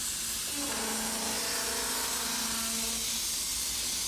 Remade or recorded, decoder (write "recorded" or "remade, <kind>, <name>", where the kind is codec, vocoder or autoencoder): recorded